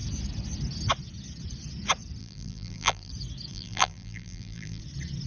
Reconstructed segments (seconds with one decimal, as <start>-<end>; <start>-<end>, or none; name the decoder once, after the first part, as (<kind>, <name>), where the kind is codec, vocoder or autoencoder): 2.2-3.1 (vocoder, BigVGAN v2); 3.5-4.8